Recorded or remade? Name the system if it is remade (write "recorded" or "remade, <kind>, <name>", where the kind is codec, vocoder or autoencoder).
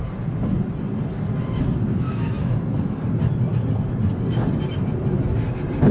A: recorded